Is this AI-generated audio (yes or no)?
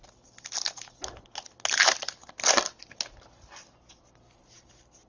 no